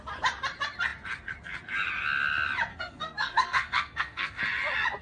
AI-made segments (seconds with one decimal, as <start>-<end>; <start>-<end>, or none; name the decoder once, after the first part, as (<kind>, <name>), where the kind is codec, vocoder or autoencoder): 2.7-4.4 (codec, SNAC)